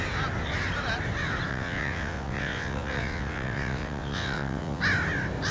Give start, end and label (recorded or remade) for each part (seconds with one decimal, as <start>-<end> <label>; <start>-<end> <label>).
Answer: 0.0-1.5 recorded; 1.5-4.8 remade; 4.8-5.5 recorded